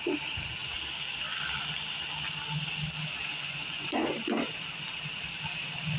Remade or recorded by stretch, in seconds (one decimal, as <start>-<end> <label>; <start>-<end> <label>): 0.0-3.3 recorded; 3.3-4.0 remade; 4.0-6.0 recorded